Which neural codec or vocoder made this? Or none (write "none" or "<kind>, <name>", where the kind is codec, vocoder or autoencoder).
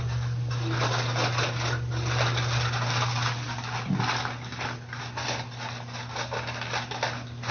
none